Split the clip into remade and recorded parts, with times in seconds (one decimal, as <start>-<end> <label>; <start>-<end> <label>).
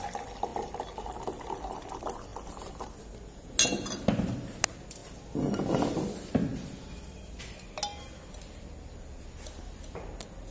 0.0-10.5 recorded